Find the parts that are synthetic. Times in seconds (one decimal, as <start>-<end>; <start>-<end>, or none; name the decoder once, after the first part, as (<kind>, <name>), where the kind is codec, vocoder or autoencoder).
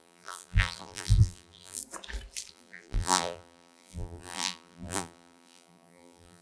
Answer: 0.0-1.8 (vocoder, BigVGAN v2); 2.5-6.4